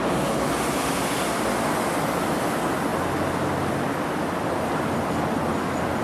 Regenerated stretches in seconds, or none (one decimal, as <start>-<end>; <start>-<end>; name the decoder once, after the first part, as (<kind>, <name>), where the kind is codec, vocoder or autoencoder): none